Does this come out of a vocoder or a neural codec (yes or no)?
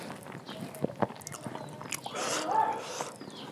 no